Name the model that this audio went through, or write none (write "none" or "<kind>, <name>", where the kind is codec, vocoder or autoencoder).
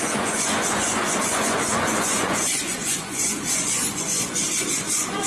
vocoder, Vocos